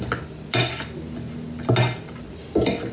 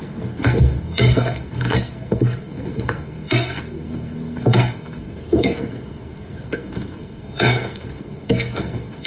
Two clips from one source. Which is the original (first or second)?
first